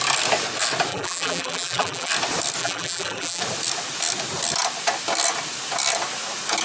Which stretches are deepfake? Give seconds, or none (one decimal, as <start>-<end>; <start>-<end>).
0.9-2.1; 2.6-3.4